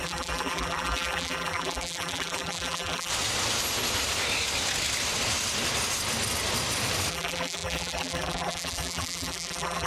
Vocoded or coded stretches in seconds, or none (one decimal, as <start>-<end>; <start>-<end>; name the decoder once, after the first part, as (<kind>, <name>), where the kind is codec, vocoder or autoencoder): 0.0-3.1 (vocoder, BigVGAN v2); 7.1-9.9